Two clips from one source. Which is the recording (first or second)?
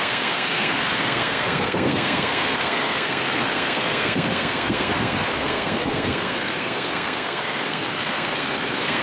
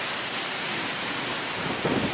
second